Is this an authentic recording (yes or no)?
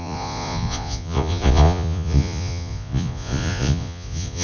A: no